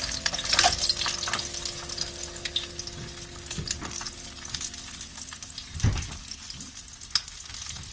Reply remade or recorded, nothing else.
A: recorded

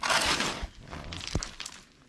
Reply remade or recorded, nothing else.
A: recorded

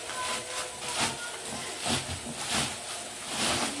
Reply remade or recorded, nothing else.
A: recorded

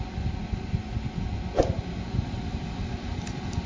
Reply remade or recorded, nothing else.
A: recorded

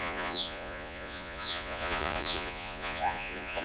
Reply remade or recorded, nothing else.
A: remade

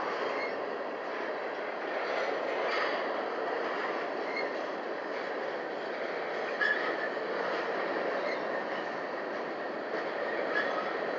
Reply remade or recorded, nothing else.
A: recorded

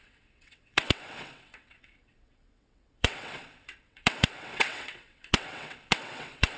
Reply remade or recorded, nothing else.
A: remade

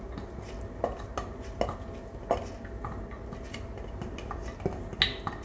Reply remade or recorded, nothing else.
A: recorded